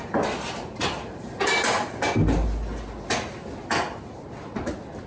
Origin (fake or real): real